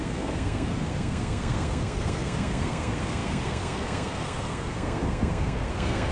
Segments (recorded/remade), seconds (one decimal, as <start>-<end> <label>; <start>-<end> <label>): 0.0-6.1 remade